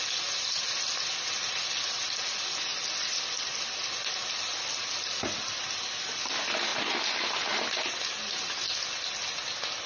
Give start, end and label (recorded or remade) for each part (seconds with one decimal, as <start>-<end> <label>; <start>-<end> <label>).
0.0-9.9 recorded